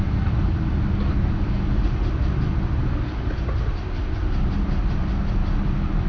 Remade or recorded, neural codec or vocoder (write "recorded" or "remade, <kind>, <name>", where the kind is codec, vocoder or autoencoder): recorded